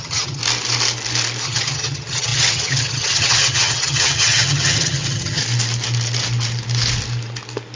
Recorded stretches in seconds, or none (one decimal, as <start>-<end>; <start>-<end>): 0.4-1.4; 5.4-7.8